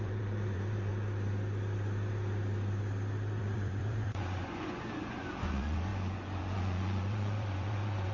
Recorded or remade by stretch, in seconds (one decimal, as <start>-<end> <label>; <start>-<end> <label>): 0.0-0.9 remade; 0.9-3.4 recorded; 3.4-8.1 remade